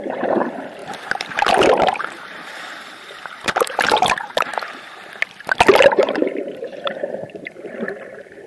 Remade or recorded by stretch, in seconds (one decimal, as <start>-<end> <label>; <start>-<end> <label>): 0.0-4.5 remade; 4.5-5.9 recorded; 5.9-8.5 remade